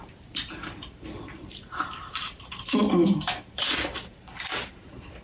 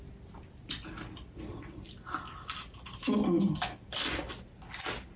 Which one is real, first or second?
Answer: second